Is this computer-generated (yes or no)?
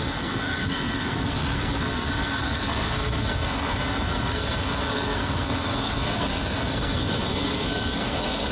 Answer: yes